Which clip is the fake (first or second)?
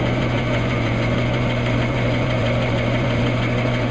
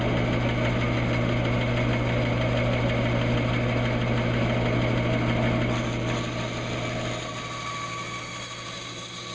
first